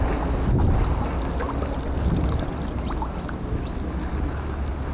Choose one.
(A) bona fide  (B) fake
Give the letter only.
A